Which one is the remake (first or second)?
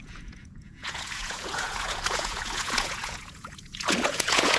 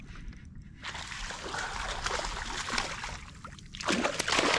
first